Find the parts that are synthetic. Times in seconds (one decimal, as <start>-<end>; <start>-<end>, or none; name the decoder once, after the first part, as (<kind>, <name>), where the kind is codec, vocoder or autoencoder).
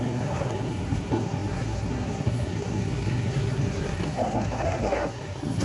0.0-5.6 (codec, SNAC)